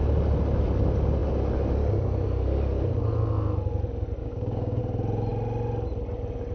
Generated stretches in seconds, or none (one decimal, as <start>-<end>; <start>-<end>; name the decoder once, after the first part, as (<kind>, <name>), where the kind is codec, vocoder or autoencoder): 4.2-4.8 (codec, DAC)